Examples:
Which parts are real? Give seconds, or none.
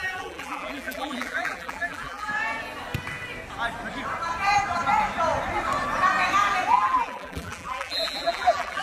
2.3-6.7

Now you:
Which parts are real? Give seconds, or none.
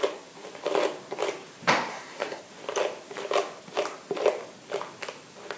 0.0-1.9; 2.4-5.6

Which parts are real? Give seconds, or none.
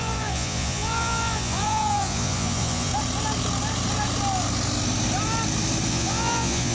2.9-5.9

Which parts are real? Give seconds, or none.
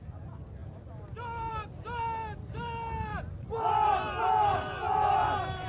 0.0-5.7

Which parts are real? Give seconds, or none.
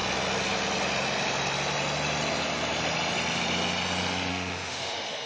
0.0-4.3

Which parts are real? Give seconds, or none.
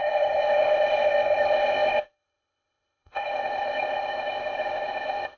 none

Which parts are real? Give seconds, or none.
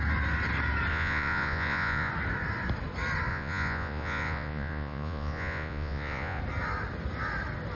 0.0-0.9; 2.1-3.3; 6.4-7.7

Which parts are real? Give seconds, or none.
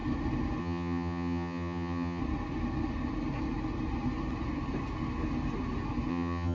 0.0-0.6; 2.2-6.1